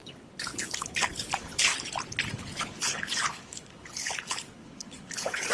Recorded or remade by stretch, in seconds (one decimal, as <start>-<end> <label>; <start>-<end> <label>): 0.0-1.7 remade; 1.7-2.4 recorded; 2.4-5.5 remade